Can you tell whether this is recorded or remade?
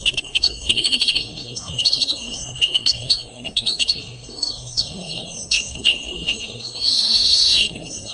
remade